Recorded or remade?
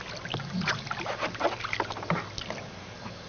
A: recorded